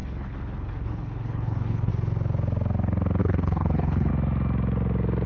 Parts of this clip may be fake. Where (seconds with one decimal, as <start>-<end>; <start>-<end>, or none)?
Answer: 0.0-1.9; 3.2-4.1